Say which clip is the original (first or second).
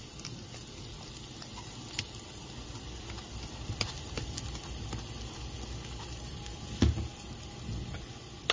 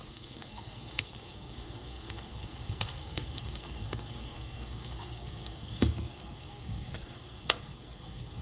first